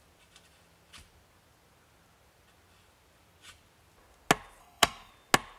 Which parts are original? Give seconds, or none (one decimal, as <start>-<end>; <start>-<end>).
0.0-4.6; 5.1-5.6